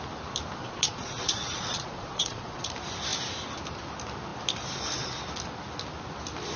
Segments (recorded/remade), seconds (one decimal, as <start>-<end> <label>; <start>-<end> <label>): 0.0-0.6 recorded; 0.6-2.6 remade; 2.6-6.6 recorded